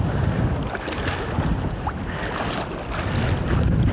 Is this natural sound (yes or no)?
yes